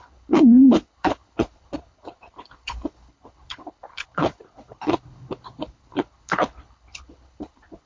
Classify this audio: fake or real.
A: fake